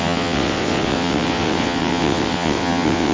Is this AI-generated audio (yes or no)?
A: yes